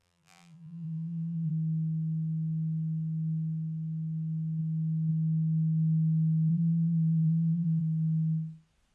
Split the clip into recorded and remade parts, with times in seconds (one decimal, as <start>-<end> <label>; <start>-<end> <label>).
0.0-1.5 remade; 1.5-6.5 recorded; 6.5-7.8 remade; 7.8-8.9 recorded